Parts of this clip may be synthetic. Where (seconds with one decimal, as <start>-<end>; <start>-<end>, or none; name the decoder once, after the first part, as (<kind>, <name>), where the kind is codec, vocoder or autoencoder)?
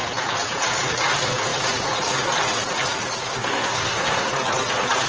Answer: 3.2-4.3 (codec, SNAC)